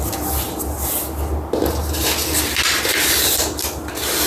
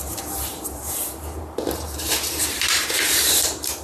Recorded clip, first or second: first